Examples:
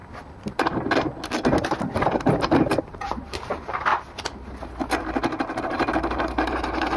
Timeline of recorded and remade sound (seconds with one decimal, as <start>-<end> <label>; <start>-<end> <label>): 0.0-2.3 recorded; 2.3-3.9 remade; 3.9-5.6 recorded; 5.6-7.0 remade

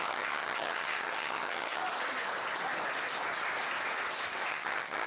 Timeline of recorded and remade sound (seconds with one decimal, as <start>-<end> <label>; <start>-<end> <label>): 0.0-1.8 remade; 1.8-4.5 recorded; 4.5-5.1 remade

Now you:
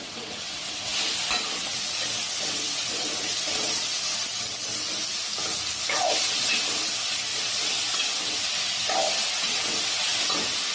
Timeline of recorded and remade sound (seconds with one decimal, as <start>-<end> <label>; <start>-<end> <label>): 0.0-0.9 remade; 0.9-1.4 recorded; 1.4-4.7 remade; 4.7-6.3 recorded; 6.3-10.7 remade